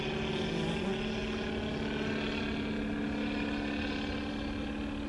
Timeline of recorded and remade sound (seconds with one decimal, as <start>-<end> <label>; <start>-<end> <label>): 0.0-5.1 recorded